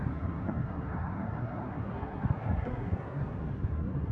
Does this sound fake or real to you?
fake